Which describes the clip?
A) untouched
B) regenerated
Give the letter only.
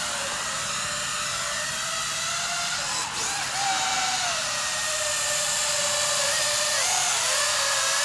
A